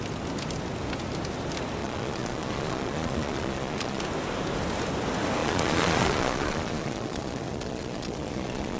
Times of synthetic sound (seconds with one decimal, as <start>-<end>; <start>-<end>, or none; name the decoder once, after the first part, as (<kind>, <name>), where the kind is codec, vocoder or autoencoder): 1.8-4.0 (vocoder, Vocos); 5.4-8.8